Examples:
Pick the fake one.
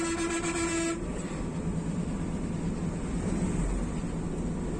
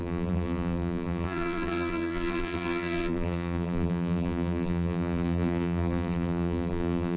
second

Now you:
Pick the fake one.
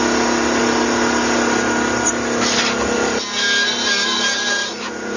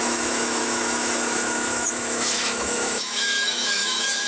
second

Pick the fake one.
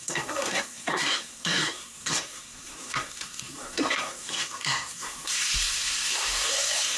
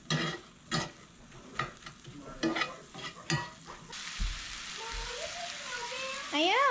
first